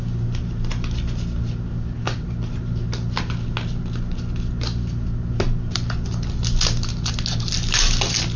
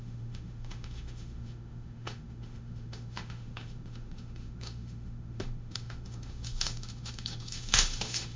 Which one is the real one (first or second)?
first